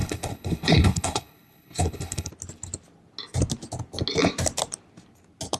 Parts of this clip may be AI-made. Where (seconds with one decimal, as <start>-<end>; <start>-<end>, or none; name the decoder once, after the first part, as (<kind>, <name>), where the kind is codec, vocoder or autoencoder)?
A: 0.0-2.3 (codec, HILCodec)